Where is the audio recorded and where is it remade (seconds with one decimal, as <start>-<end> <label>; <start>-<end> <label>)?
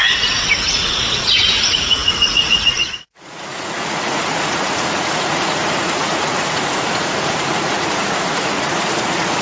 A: 0.0-9.4 remade